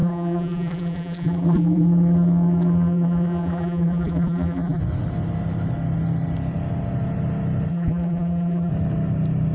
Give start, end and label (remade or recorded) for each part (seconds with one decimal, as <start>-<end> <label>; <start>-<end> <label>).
0.0-4.8 remade; 4.8-7.7 recorded; 7.7-8.7 remade; 8.7-9.5 recorded